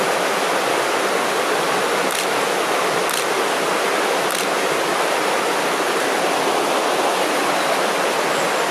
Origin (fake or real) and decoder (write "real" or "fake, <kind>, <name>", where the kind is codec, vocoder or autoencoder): real